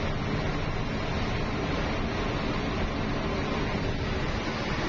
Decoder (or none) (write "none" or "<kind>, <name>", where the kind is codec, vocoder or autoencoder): none